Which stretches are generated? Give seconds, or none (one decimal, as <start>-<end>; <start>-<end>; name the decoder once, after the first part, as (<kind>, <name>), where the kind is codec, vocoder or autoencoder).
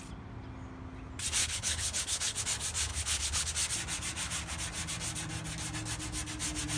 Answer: 1.4-2.4 (codec, HILCodec); 2.9-3.5